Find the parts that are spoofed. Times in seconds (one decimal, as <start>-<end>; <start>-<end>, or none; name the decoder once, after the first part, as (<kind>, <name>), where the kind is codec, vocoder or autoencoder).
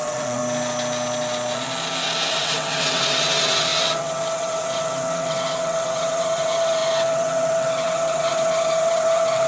0.0-0.4 (vocoder, WaveNeXt); 2.3-9.5